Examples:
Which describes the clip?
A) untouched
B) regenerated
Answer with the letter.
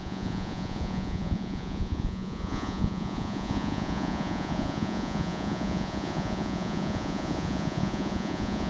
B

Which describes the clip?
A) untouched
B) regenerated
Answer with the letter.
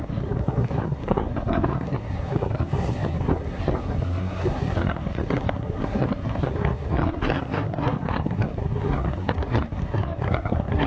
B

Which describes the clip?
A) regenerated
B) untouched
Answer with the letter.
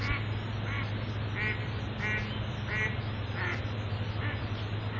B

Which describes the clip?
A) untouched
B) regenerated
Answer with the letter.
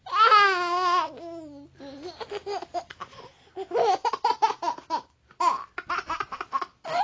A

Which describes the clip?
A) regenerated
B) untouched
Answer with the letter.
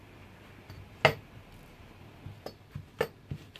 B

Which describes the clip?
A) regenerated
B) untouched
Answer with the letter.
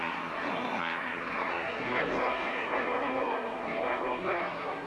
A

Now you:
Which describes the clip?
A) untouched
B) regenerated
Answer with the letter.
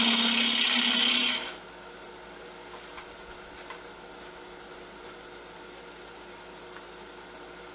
A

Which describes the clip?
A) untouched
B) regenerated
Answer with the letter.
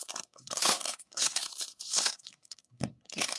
B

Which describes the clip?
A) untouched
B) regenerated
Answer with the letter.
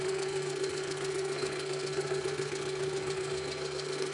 B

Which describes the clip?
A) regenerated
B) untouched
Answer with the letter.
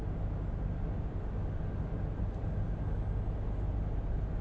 B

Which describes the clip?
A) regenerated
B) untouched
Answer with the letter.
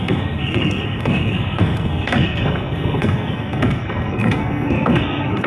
A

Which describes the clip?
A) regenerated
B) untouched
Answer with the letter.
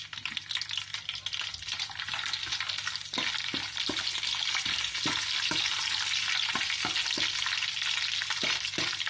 B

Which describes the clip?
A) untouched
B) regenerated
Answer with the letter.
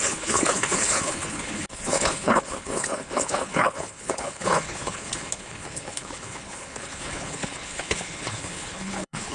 B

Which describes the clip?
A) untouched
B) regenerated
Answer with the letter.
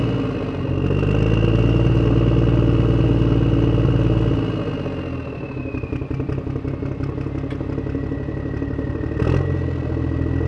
A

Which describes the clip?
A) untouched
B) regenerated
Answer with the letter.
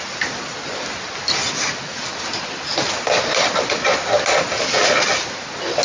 A